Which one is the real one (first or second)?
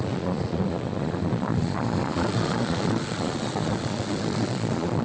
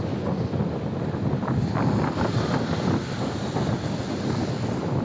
second